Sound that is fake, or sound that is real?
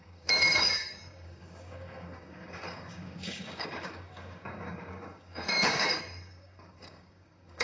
fake